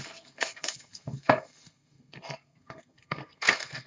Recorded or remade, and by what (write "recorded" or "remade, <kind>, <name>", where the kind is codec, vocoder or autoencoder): remade, codec, SNAC